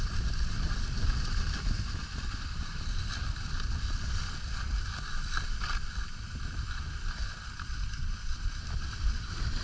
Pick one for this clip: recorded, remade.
recorded